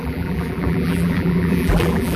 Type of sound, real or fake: fake